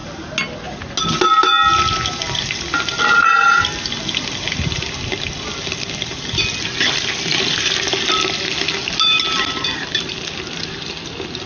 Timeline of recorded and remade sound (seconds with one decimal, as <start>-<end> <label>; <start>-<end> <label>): 0.0-11.5 recorded